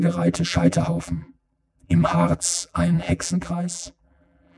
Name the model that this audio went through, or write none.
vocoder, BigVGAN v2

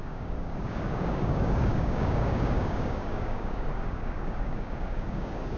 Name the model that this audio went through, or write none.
codec, DAC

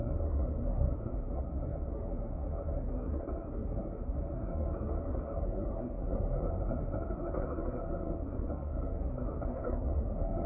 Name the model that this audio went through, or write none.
codec, SNAC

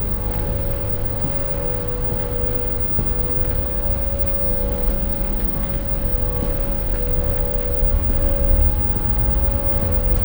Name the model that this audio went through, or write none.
none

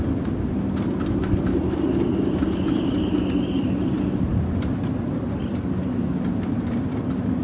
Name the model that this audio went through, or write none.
none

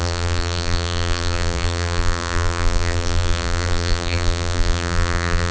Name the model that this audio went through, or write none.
vocoder, BigVGAN v2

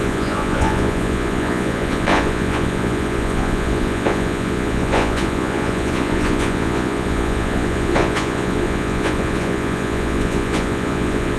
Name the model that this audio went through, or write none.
vocoder, Vocos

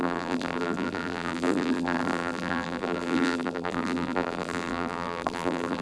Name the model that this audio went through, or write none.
vocoder, BigVGAN v2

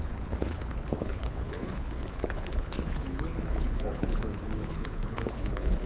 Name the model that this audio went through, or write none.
codec, HILCodec